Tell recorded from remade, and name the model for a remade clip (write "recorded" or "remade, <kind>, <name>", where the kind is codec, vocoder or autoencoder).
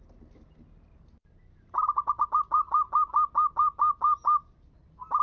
recorded